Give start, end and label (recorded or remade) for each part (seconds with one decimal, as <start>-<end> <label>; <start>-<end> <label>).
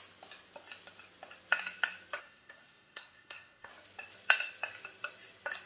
0.0-2.2 recorded; 2.2-3.7 remade; 3.7-5.7 recorded